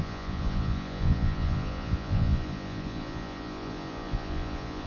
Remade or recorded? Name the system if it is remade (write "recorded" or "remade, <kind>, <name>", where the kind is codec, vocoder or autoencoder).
remade, vocoder, Vocos